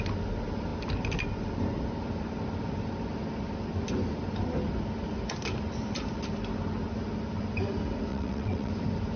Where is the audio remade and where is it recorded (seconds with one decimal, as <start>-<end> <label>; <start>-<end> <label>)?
0.0-8.1 recorded; 8.1-8.7 remade; 8.7-9.2 recorded